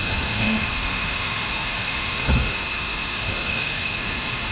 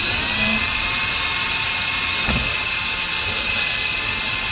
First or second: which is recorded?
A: second